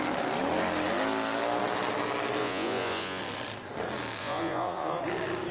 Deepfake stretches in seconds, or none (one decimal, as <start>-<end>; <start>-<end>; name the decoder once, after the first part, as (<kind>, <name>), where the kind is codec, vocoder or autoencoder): 2.4-3.2 (vocoder, Vocos); 4.2-5.0